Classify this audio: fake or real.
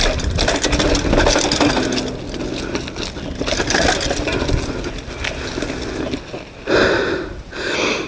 real